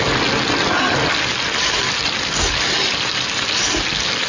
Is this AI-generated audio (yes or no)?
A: no